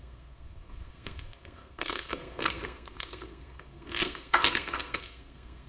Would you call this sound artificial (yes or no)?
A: yes